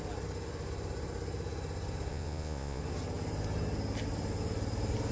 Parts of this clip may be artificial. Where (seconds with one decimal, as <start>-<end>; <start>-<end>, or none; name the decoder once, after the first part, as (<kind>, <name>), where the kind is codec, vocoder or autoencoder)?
2.1-2.8 (vocoder, Vocos)